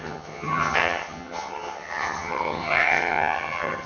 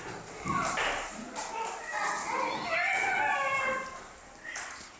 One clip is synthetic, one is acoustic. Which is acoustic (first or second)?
second